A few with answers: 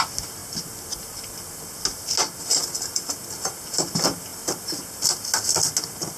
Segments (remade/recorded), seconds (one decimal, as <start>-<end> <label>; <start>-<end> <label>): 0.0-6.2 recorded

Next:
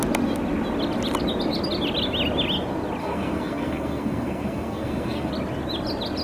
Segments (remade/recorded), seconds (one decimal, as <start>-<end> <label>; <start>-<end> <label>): 0.0-3.0 recorded; 3.0-5.3 remade; 5.3-6.2 recorded

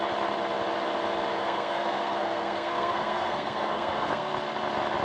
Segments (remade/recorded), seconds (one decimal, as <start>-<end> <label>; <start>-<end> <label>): 0.0-1.3 recorded; 1.3-4.3 remade; 4.3-5.0 recorded

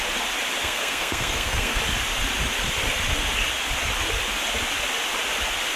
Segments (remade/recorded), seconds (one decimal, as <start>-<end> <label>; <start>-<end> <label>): 0.0-0.6 recorded; 0.6-1.8 remade; 1.8-5.8 recorded

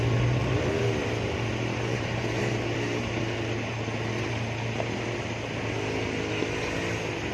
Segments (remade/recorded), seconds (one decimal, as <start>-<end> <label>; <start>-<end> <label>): 0.0-7.3 recorded

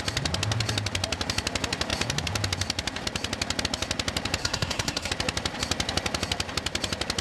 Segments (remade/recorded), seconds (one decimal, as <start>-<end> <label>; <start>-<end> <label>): 0.0-4.4 recorded; 4.4-5.1 remade; 5.1-7.2 recorded

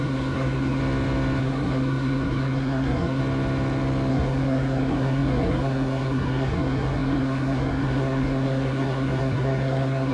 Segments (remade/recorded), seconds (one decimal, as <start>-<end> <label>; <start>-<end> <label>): 0.0-0.8 remade; 0.8-1.4 recorded; 1.4-3.2 remade; 3.2-4.1 recorded; 4.1-10.1 remade

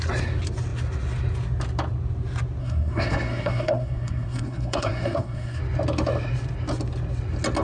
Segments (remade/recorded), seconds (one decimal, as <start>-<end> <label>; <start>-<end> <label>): 0.0-2.6 recorded; 2.6-5.6 remade; 5.6-7.6 recorded